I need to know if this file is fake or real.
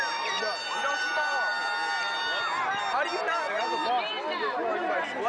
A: real